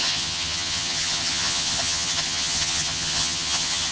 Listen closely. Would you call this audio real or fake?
fake